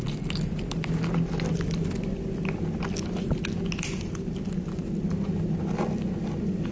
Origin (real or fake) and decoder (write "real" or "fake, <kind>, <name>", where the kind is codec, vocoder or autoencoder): real